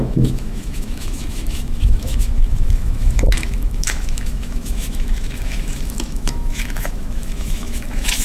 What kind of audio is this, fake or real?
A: fake